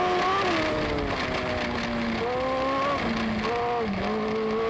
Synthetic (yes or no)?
no